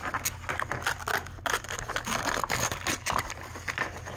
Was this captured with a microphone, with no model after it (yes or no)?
yes